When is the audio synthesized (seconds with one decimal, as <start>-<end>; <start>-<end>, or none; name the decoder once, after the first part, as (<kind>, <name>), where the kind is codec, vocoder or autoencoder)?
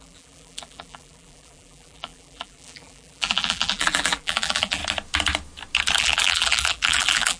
0.0-4.8 (vocoder, BigVGAN v2); 6.0-7.4